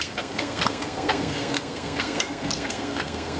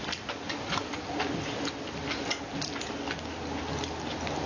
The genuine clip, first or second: second